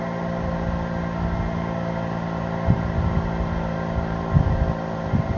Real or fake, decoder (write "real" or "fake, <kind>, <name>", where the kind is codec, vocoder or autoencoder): real